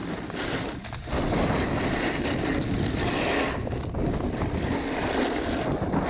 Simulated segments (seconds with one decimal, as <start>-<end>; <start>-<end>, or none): none